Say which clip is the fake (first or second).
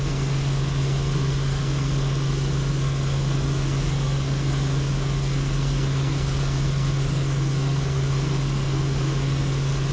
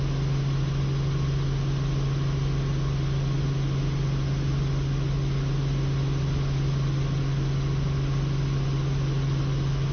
first